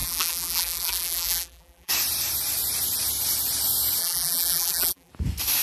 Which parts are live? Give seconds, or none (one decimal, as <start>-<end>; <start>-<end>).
1.9-4.0; 5.1-5.6